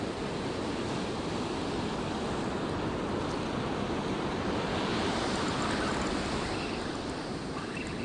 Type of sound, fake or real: real